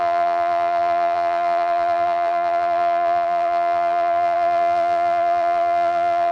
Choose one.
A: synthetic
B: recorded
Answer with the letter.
A